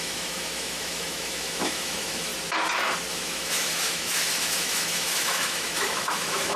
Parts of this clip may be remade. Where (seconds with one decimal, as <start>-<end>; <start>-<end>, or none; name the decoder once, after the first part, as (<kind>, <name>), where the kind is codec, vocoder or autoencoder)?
0.0-2.3 (autoencoder, DAC-VAE); 3.1-6.6